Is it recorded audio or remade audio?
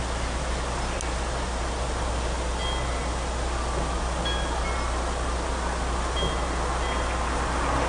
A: recorded